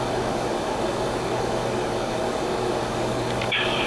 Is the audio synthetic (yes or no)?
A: yes